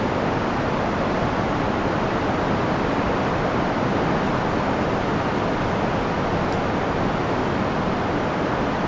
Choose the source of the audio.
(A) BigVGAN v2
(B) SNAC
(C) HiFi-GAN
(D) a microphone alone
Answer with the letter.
D